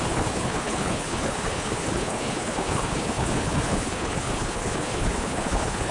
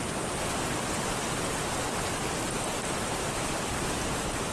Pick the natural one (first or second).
second